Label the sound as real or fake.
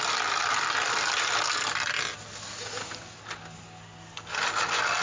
real